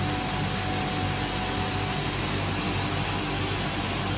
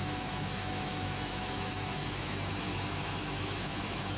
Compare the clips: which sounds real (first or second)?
first